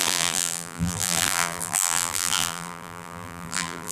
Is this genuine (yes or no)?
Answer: no